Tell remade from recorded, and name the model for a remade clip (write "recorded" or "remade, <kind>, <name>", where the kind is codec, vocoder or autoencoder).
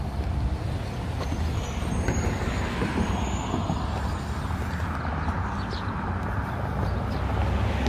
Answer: recorded